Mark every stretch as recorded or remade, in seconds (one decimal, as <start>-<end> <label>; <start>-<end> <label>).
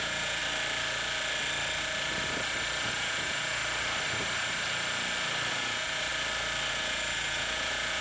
0.0-0.4 remade; 0.4-2.9 recorded; 2.9-3.6 remade; 3.6-5.5 recorded; 5.5-6.1 remade; 6.1-6.7 recorded; 6.7-8.0 remade